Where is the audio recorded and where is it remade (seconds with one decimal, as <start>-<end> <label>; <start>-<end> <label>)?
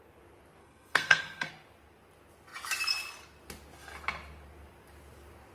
0.0-0.6 recorded; 0.6-1.5 remade; 1.5-5.5 recorded